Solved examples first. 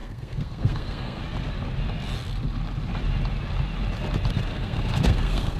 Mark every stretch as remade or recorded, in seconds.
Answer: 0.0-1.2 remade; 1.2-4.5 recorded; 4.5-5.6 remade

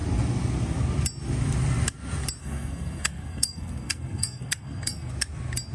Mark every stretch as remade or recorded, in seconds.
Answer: 0.0-2.4 recorded; 2.4-5.1 remade; 5.1-5.7 recorded

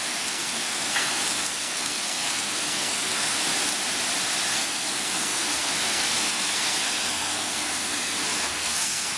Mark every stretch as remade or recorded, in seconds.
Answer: 0.0-3.5 remade; 3.5-4.5 recorded; 4.5-9.2 remade

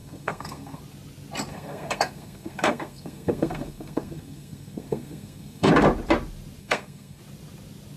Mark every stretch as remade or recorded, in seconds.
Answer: 0.0-0.8 remade; 0.8-1.5 recorded; 1.5-5.7 remade; 5.7-6.6 recorded; 6.6-7.2 remade; 7.2-8.0 recorded